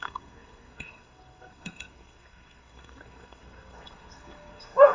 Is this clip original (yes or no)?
no